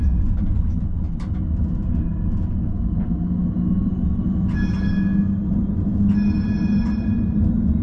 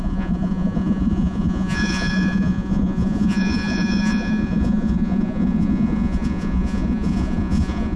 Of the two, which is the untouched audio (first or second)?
first